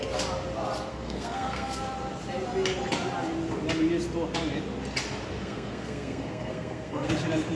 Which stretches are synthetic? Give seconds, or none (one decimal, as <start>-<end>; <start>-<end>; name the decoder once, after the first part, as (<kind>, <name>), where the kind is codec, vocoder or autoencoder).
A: 0.9-1.8 (codec, SNAC); 5.4-7.1